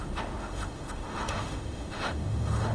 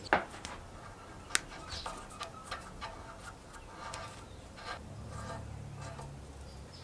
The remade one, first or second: first